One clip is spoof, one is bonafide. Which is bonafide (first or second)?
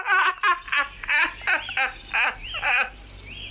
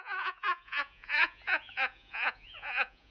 first